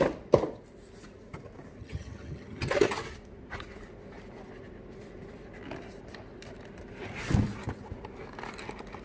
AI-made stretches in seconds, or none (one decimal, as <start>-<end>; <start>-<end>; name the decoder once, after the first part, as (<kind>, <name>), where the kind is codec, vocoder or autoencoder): 1.8-2.7 (vocoder, HiFi-GAN)